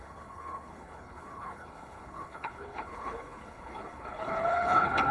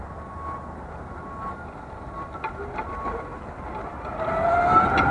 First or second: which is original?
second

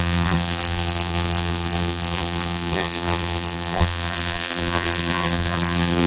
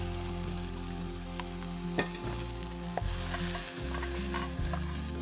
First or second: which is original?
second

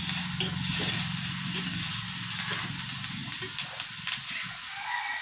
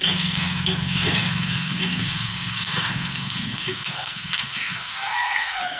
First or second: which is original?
first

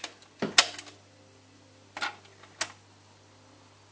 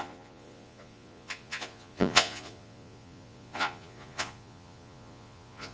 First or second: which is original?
first